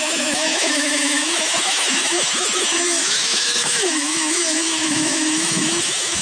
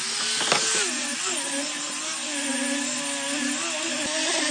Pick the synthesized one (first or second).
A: first